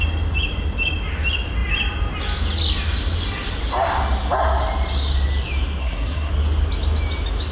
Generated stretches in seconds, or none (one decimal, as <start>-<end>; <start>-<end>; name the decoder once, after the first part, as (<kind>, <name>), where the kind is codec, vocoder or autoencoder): 5.8-6.3 (codec, SNAC)